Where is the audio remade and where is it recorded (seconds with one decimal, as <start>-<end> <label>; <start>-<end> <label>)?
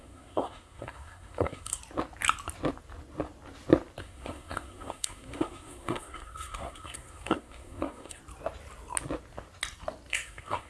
0.0-1.8 remade; 1.8-4.0 recorded; 4.0-8.2 remade; 8.2-10.1 recorded; 10.1-10.7 remade